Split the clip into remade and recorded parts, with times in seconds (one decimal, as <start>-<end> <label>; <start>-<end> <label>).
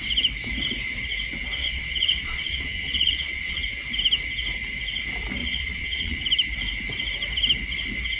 0.0-1.6 recorded; 1.6-3.6 remade; 3.6-5.4 recorded; 5.4-6.2 remade; 6.2-8.2 recorded